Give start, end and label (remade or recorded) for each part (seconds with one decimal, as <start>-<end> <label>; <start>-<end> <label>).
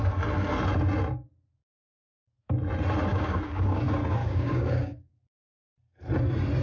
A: 0.0-3.1 recorded; 3.1-3.8 remade; 3.8-4.2 recorded; 4.2-5.3 remade; 5.3-6.6 recorded